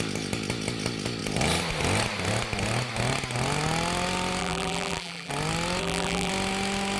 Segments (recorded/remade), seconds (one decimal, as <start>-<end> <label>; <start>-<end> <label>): 0.0-4.4 recorded; 4.4-5.3 remade; 5.3-5.8 recorded; 5.8-6.3 remade; 6.3-7.0 recorded